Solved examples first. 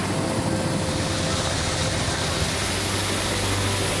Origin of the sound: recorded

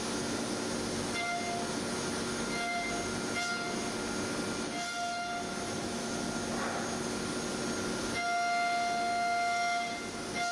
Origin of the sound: recorded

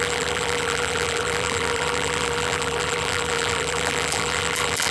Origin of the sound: remade